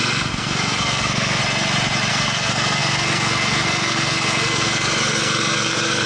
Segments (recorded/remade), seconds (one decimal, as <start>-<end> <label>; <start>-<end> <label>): 0.0-1.4 remade; 1.4-2.1 recorded; 2.1-6.1 remade